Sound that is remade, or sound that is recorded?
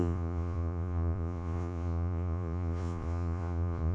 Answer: remade